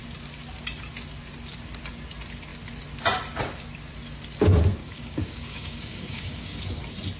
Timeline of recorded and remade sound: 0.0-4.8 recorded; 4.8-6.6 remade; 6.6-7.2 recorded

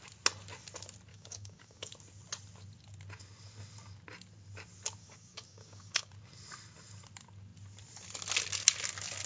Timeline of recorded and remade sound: 0.0-1.1 recorded; 1.1-1.9 remade; 1.9-5.0 recorded; 5.0-6.1 remade; 6.1-9.3 recorded

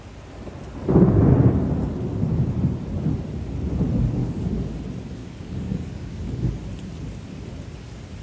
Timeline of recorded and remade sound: 0.0-4.2 recorded; 4.2-4.8 remade; 4.8-5.2 recorded; 5.2-6.5 remade; 6.5-8.2 recorded